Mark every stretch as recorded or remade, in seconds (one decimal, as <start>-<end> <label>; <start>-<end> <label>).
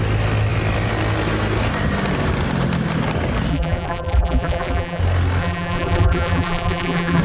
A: 0.0-3.5 recorded; 3.5-5.0 remade; 5.0-5.4 recorded; 5.4-7.2 remade